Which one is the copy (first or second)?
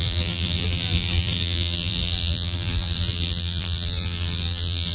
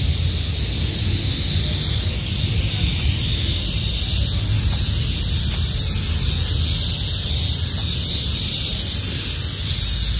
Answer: first